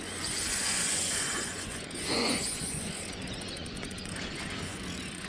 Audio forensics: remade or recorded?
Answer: remade